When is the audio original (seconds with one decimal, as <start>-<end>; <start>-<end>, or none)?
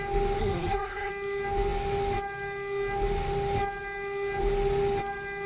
0.0-0.4; 1.1-5.5